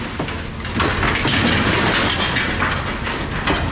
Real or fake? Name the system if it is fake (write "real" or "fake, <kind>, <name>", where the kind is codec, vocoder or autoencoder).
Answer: real